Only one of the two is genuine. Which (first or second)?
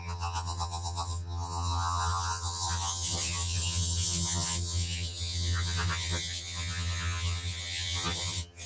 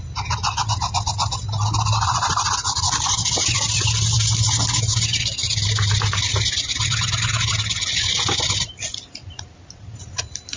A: second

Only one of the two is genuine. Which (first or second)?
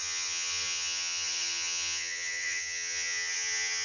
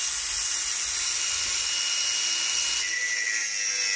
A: second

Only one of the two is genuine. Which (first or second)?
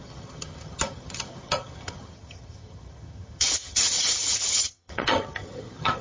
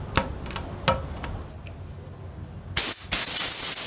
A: second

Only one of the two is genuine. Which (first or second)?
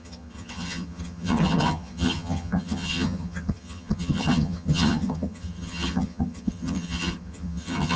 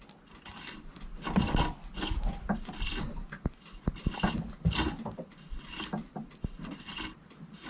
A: second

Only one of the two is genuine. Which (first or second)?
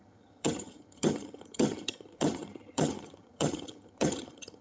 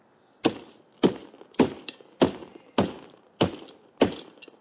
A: second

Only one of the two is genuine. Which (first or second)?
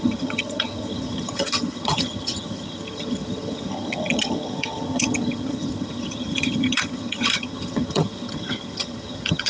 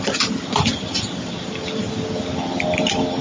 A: second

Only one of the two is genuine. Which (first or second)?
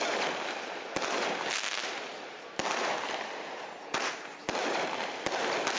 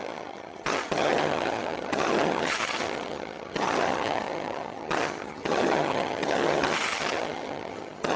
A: first